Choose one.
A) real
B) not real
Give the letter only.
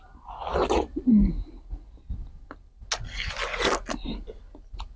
A